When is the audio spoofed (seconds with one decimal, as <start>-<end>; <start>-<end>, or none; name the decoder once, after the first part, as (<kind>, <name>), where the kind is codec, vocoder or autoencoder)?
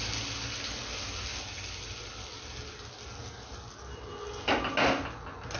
none